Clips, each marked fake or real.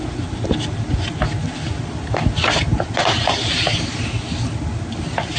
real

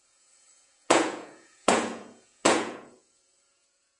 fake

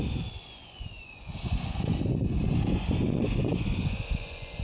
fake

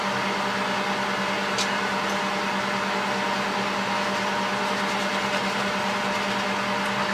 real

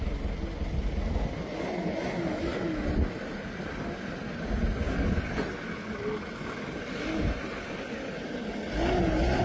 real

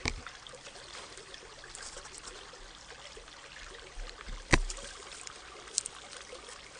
real